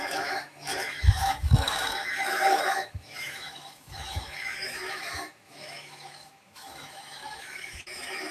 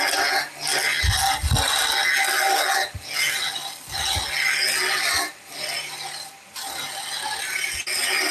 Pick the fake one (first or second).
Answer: first